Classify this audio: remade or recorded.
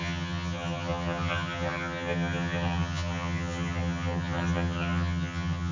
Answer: remade